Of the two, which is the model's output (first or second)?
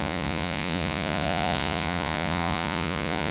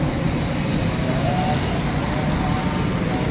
first